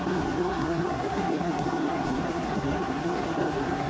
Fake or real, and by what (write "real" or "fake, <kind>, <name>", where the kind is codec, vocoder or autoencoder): fake, codec, SNAC